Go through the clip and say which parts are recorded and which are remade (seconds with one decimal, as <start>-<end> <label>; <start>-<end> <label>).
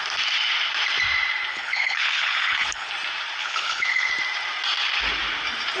0.0-1.5 recorded; 1.5-2.9 remade; 2.9-3.4 recorded; 3.4-4.1 remade; 4.1-5.8 recorded